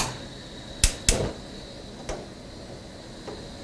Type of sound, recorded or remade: recorded